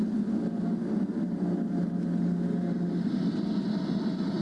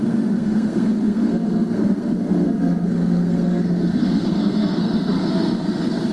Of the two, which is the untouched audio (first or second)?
first